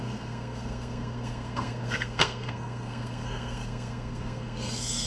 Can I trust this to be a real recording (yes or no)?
no